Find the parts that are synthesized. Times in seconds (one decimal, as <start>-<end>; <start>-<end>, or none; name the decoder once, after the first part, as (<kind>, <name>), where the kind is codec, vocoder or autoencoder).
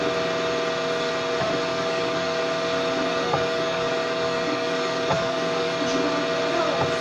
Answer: 1.7-2.4 (codec, DAC); 3.1-5.7